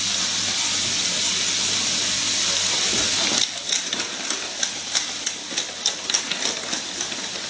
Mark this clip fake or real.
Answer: real